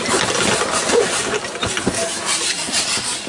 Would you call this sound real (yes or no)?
yes